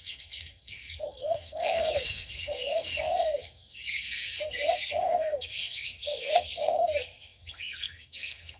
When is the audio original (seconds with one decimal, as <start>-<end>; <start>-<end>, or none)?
none